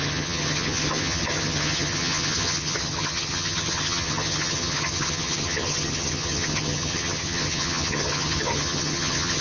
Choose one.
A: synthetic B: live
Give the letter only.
A